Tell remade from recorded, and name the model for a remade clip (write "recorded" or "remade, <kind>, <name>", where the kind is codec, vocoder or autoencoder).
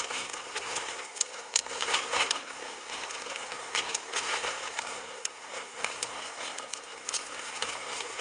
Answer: remade, codec, SNAC